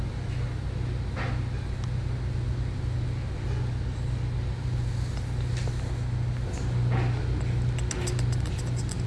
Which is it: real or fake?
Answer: real